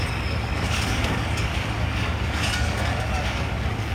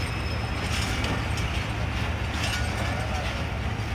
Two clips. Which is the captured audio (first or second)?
second